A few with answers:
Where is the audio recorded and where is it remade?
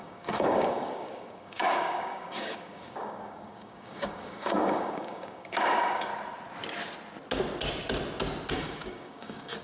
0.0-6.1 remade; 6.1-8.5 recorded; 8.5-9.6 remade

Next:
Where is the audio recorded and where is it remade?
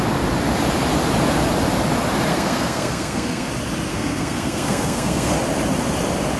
0.0-2.3 recorded; 2.3-3.5 remade; 3.5-3.9 recorded; 3.9-5.3 remade; 5.3-6.4 recorded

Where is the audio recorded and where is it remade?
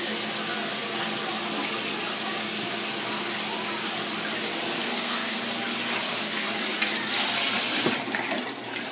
0.0-4.8 recorded; 4.8-5.4 remade; 5.4-8.9 recorded